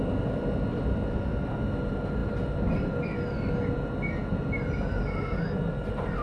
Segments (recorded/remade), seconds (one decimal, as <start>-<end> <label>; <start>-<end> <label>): 0.0-6.2 recorded